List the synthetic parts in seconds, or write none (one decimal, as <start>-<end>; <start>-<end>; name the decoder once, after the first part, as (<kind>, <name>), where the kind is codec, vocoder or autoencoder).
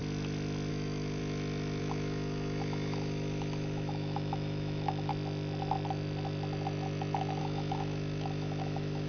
0.7-1.2 (autoencoder, DAC-VAE); 1.8-5.1; 7.4-9.1